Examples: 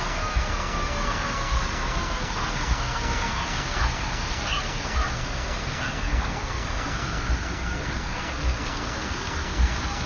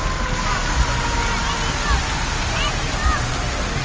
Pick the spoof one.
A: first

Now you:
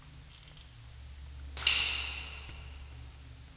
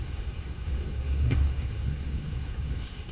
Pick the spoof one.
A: second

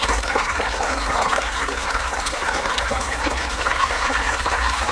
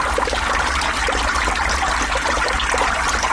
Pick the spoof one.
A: first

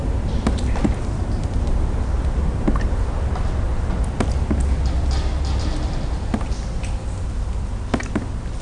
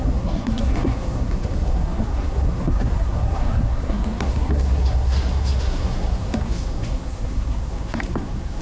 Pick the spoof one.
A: second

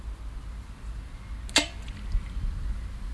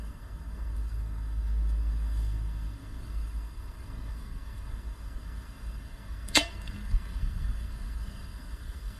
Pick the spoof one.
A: second